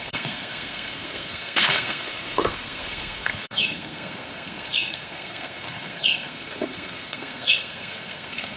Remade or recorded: remade